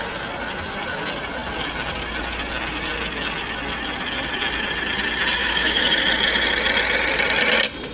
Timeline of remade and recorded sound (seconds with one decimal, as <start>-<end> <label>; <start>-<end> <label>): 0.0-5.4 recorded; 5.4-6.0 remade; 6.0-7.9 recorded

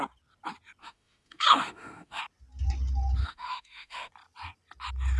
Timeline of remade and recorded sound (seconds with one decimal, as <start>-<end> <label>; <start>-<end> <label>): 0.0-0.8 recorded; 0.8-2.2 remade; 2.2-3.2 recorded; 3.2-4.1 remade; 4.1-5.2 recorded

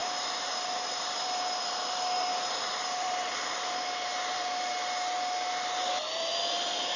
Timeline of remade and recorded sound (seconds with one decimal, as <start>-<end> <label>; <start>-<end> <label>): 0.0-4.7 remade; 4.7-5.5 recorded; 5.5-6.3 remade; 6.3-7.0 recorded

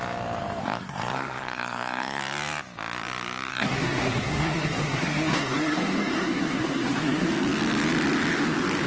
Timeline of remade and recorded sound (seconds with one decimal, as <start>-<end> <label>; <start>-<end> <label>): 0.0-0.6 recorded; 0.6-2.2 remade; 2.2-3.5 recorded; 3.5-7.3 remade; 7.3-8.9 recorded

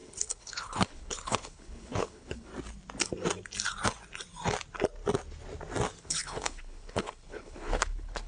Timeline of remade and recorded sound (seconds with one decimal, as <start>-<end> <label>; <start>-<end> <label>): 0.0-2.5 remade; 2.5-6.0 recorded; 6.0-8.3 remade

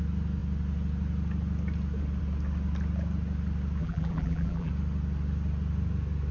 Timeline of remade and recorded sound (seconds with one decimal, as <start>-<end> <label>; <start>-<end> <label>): 0.0-3.8 recorded; 3.8-4.7 remade; 4.7-6.3 recorded